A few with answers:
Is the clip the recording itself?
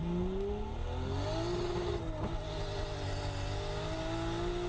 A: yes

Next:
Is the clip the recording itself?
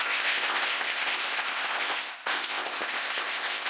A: no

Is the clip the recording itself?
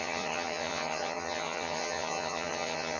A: no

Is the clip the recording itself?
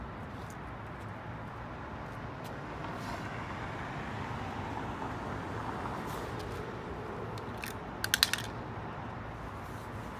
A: yes